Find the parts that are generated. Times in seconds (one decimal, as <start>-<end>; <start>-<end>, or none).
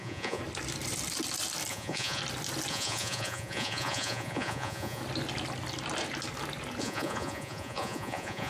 0.0-0.4; 1.7-2.2; 2.7-5.0; 6.8-8.5